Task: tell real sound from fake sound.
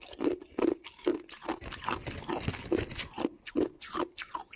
real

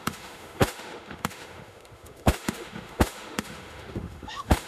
fake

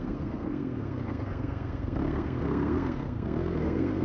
fake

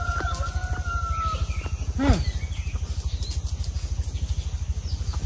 real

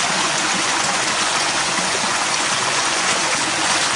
fake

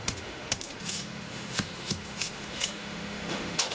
fake